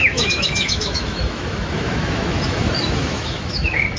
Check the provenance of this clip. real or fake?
fake